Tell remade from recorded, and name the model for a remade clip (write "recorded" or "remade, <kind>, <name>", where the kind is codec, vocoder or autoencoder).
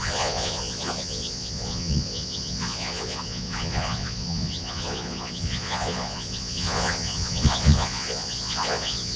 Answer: remade, vocoder, Vocos